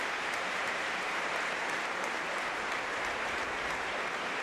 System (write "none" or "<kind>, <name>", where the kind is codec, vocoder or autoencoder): vocoder, BigVGAN v2